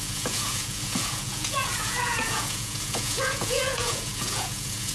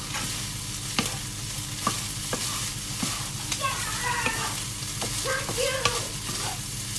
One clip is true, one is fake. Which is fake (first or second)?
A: first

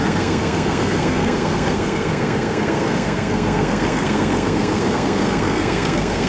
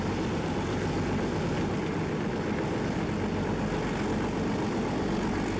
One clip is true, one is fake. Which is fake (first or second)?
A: first